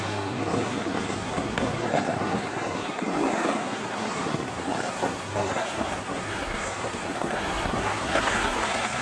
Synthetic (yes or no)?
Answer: yes